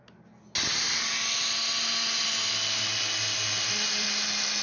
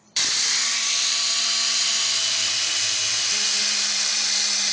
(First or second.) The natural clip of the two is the first